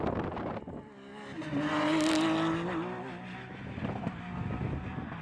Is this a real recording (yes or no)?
yes